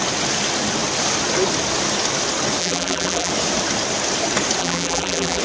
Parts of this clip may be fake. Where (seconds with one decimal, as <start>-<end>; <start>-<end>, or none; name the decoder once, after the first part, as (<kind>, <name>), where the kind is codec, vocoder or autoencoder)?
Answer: 2.6-3.3 (vocoder, BigVGAN v2); 4.6-5.4